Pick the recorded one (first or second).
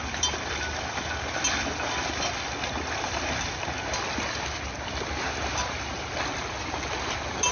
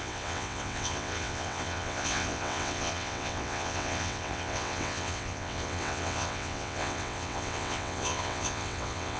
first